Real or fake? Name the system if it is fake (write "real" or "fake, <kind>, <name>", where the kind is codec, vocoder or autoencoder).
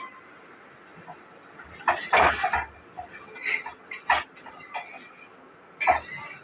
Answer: real